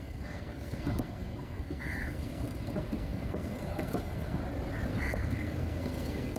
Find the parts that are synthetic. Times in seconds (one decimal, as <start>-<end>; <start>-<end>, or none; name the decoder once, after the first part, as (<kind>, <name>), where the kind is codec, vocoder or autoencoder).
0.0-4.4 (codec, SNAC); 4.9-6.4